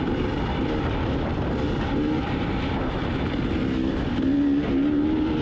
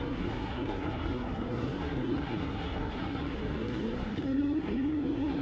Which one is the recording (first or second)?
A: first